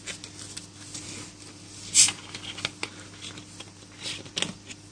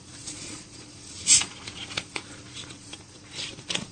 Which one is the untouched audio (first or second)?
first